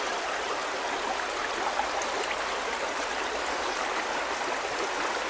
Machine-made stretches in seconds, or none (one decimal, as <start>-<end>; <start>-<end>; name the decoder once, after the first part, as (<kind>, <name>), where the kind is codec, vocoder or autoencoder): none